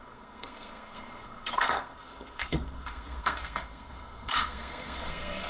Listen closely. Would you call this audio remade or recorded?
remade